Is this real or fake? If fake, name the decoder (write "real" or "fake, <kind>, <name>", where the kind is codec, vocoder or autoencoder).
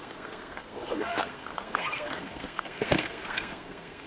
fake, codec, SNAC